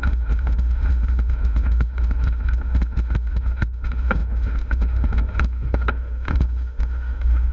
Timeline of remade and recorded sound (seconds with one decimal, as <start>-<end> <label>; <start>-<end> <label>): 0.0-7.5 remade

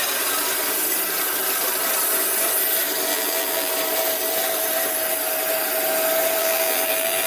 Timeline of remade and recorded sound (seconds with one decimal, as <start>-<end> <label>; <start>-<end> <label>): 0.0-3.1 recorded; 3.1-3.7 remade; 3.7-6.4 recorded; 6.4-7.3 remade

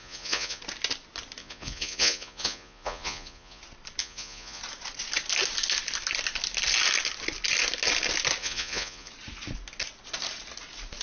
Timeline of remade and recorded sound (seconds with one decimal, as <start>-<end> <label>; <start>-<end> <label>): 0.0-0.6 remade; 0.6-1.4 recorded; 1.4-3.6 remade; 3.6-4.0 recorded; 4.0-4.6 remade; 4.6-8.4 recorded; 8.4-9.1 remade; 9.1-11.0 recorded